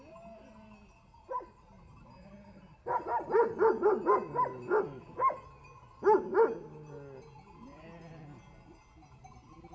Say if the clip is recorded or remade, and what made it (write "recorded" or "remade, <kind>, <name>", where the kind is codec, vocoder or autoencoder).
recorded